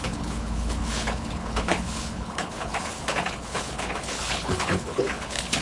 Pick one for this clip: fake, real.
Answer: fake